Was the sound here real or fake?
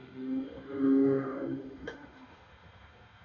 fake